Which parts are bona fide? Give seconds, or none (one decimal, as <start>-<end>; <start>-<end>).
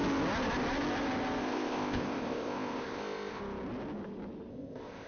0.0-1.4; 3.4-4.5